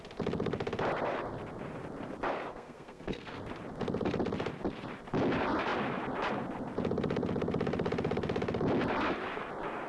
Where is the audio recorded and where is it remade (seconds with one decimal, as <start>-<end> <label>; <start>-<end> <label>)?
0.0-2.5 recorded; 2.5-3.4 remade; 3.4-9.9 recorded